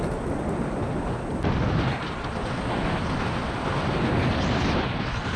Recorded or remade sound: recorded